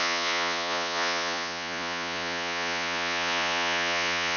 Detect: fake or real fake